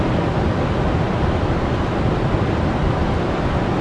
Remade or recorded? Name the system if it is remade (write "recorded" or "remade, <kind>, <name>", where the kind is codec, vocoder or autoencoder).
recorded